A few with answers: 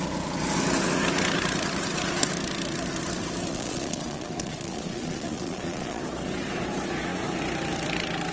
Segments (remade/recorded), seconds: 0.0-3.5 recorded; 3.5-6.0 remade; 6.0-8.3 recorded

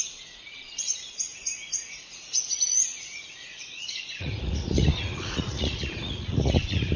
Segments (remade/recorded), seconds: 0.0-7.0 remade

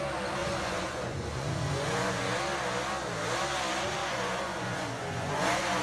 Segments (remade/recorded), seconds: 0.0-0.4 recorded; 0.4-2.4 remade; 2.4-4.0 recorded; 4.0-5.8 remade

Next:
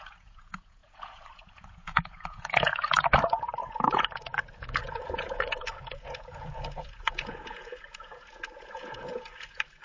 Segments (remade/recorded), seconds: 0.0-9.8 remade

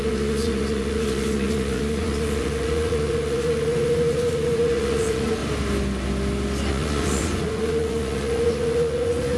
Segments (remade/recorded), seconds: 0.0-5.4 remade; 5.4-6.7 recorded; 6.7-9.4 remade

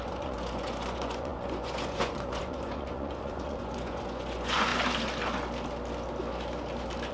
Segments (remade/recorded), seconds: 0.0-4.7 remade; 4.7-7.1 recorded

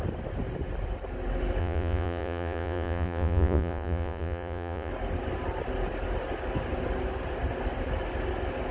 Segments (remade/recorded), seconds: 0.0-1.6 recorded; 1.6-4.9 remade; 4.9-8.7 recorded